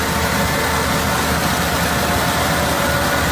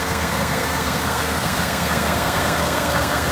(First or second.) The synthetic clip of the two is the second